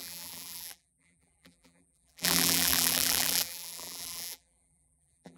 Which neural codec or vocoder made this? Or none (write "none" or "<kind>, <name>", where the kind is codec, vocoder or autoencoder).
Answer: vocoder, BigVGAN v2